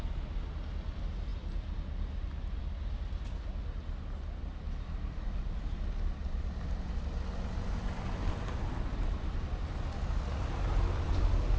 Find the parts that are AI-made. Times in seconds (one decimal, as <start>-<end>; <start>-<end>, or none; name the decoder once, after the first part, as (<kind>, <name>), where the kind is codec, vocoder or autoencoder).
none